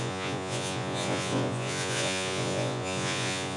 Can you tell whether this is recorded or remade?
remade